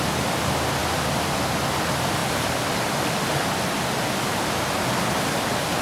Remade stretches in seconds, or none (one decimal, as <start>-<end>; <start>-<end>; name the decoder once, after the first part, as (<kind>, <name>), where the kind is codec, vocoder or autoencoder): 0.8-1.7 (vocoder, BigVGAN v2); 2.2-3.1